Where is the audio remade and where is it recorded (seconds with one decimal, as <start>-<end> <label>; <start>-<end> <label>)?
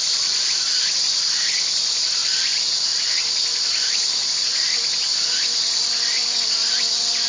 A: 0.0-7.3 recorded